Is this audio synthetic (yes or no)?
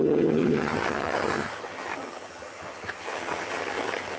yes